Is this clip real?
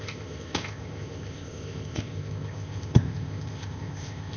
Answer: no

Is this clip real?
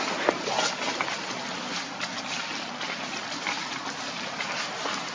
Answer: yes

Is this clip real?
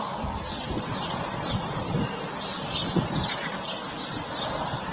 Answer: yes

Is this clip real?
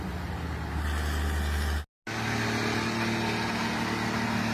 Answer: yes